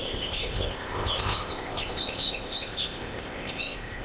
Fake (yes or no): yes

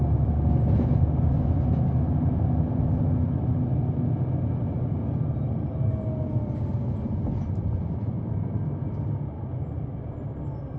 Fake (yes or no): no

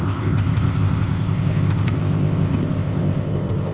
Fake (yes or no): yes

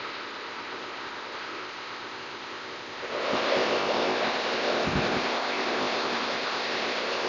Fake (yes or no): yes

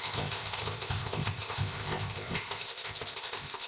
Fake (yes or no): yes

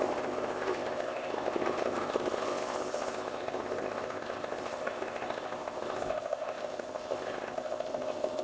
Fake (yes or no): yes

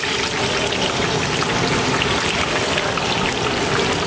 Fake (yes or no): no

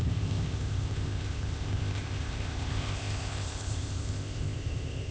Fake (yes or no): yes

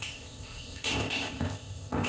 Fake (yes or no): yes